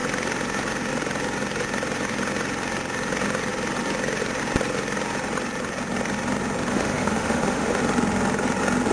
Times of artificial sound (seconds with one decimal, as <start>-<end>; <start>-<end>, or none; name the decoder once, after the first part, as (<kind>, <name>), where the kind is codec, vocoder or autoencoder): 6.7-7.8 (autoencoder, DAC-VAE)